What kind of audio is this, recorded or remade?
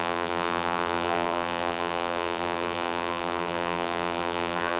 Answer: remade